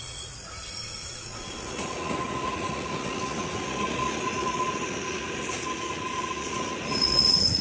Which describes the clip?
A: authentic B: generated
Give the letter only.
B